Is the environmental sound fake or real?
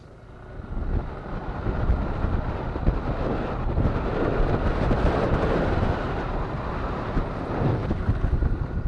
real